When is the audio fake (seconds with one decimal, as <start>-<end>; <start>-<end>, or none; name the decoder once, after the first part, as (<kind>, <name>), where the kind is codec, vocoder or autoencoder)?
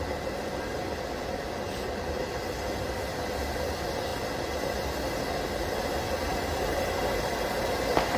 6.3-7.0 (vocoder, BigVGAN v2)